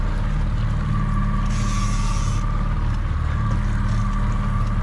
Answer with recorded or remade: recorded